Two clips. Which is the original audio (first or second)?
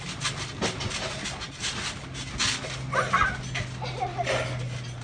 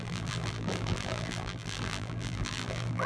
first